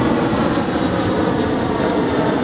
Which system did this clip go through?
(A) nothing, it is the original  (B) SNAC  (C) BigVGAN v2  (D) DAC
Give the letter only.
A